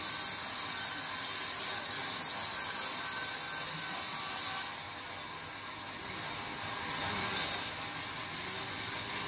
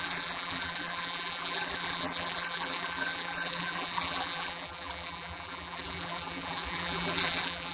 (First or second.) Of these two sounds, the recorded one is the first